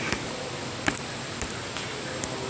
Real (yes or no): yes